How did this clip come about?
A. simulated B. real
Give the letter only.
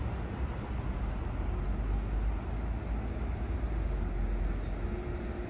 B